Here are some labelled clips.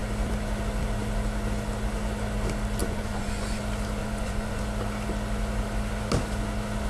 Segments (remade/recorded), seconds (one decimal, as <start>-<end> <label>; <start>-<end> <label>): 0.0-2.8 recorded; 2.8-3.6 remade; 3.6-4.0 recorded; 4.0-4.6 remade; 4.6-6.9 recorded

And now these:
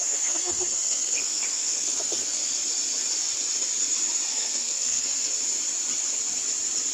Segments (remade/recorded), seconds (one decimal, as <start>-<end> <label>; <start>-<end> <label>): 0.0-2.5 remade; 2.5-4.3 recorded; 4.3-5.3 remade; 5.3-6.9 recorded

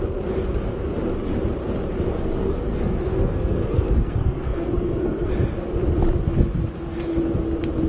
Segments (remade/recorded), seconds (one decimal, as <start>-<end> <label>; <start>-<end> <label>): 0.0-2.1 recorded; 2.1-5.3 remade; 5.3-7.9 recorded

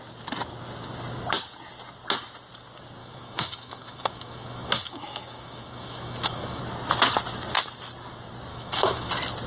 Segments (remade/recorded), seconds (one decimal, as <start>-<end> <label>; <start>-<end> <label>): 0.0-3.0 recorded; 3.0-6.6 remade; 6.6-8.5 recorded; 8.5-9.1 remade; 9.1-9.5 recorded

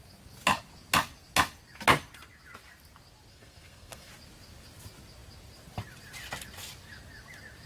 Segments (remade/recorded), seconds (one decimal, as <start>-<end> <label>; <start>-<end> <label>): 0.0-3.3 recorded; 3.3-4.1 remade; 4.1-7.7 recorded

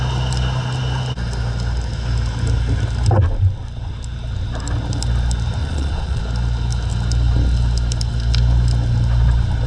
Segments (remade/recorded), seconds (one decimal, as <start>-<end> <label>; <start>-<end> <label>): 0.0-5.6 recorded; 5.6-6.2 remade; 6.2-9.7 recorded

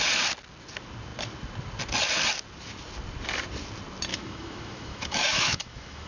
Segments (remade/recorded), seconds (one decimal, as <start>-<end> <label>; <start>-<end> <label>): 0.0-4.1 recorded; 4.1-6.1 remade